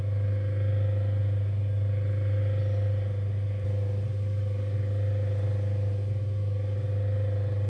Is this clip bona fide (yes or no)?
yes